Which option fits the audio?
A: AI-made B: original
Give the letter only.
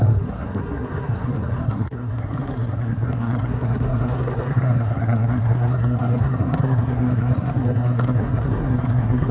A